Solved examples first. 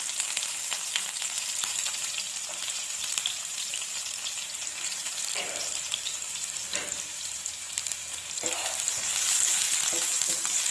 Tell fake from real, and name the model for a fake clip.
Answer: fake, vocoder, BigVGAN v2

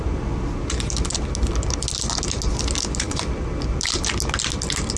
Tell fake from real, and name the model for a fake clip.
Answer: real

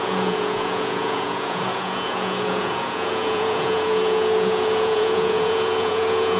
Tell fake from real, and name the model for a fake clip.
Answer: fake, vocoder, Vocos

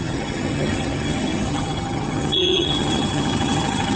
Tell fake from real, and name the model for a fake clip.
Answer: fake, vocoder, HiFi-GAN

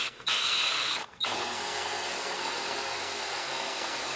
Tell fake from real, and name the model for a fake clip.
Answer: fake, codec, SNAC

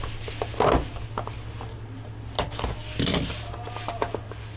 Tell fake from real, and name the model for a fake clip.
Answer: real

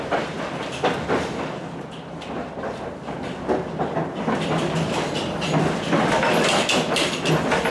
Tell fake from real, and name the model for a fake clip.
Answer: real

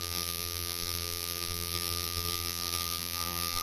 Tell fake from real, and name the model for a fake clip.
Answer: fake, vocoder, BigVGAN v2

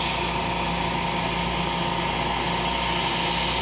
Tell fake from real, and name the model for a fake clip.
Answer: real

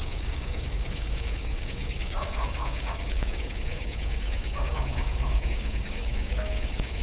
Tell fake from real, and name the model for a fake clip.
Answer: fake, codec, DAC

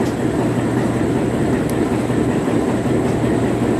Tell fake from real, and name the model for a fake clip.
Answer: real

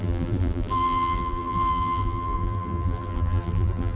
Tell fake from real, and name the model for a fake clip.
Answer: fake, vocoder, BigVGAN v2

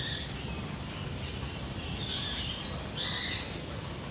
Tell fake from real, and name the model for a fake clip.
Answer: real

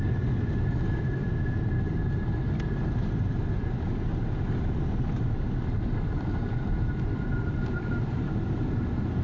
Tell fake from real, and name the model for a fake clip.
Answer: real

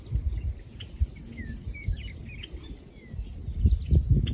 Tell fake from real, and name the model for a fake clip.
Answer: real